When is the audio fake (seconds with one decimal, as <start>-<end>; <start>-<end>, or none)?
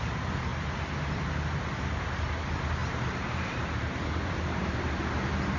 0.5-1.2; 2.8-5.0